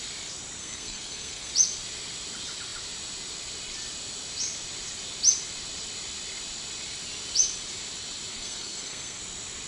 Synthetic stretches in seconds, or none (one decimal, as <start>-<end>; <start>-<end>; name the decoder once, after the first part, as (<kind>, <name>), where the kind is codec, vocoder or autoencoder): 0.6-1.5 (codec, SNAC); 8.3-9.2